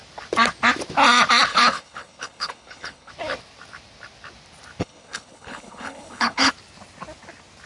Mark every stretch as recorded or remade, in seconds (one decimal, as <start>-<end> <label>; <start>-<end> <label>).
0.0-1.5 recorded; 1.5-3.1 remade; 3.1-4.8 recorded; 4.8-6.5 remade; 6.5-7.7 recorded